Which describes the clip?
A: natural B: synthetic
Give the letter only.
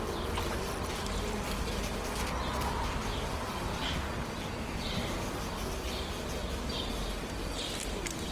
A